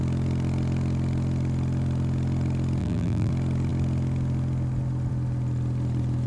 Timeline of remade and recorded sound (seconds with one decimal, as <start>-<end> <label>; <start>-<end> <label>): 0.0-2.8 recorded; 2.8-3.3 remade; 3.3-6.3 recorded

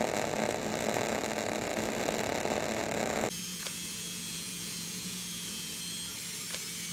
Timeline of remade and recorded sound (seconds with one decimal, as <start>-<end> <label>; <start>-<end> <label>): 0.0-3.5 recorded; 3.5-5.8 remade; 5.8-6.9 recorded